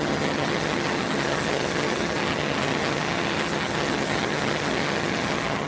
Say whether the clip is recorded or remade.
remade